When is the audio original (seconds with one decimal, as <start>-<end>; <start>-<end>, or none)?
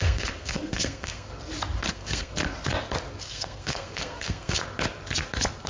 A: 1.3-1.9; 2.3-3.2; 4.6-5.7